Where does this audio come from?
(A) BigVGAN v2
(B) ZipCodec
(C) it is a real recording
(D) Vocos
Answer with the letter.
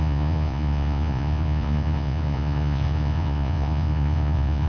D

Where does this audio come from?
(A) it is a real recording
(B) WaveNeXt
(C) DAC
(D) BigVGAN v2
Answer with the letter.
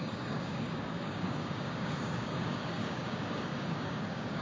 C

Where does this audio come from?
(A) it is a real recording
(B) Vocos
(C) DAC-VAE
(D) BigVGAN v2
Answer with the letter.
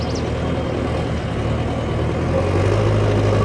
A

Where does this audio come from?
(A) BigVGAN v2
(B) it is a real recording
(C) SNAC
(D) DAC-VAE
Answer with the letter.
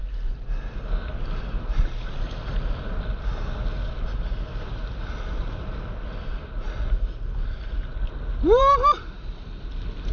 B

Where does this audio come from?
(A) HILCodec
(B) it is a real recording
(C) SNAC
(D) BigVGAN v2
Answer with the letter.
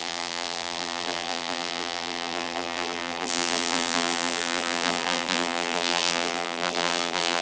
D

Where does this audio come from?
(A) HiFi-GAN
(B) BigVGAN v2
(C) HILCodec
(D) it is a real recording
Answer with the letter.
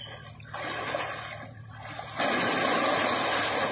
D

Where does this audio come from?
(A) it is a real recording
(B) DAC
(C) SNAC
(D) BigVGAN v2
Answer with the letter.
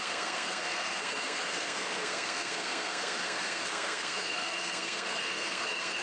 C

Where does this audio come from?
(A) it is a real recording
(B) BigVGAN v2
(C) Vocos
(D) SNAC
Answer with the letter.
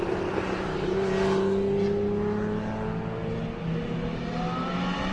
A